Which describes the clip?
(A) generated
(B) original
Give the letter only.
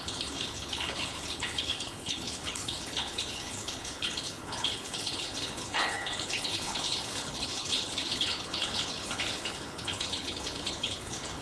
A